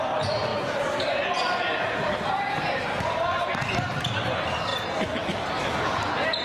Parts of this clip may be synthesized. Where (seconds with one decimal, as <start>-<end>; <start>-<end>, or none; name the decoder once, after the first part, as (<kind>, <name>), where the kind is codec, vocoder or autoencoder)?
0.5-4.0 (vocoder, BigVGAN v2)